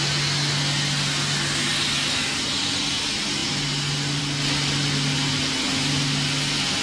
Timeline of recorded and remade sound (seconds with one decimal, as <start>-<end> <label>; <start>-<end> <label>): 0.0-6.8 recorded